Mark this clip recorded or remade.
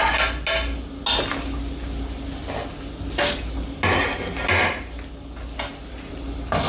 recorded